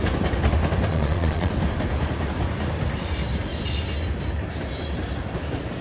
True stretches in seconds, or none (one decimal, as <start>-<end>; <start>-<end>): 0.0-0.9; 1.5-5.8